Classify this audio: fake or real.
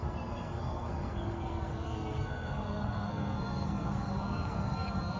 fake